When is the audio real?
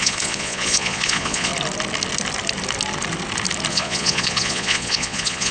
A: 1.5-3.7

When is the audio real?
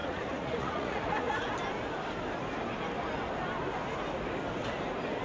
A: 1.5-5.2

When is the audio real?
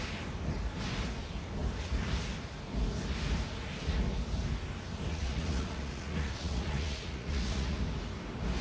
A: 0.0-5.1; 7.8-8.6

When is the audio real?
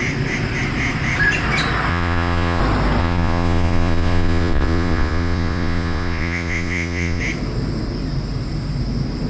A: 0.0-1.9; 2.6-3.0; 7.2-9.3